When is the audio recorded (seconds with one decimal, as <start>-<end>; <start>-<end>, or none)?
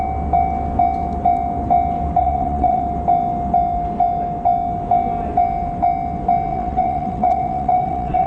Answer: 0.0-2.2; 2.8-6.5